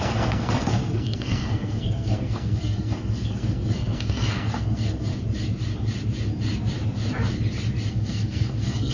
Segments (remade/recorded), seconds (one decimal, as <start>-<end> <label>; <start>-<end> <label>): 0.0-5.1 remade; 5.1-7.9 recorded; 7.9-8.9 remade